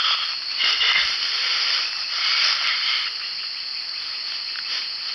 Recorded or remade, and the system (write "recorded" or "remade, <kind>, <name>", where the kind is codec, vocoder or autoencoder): recorded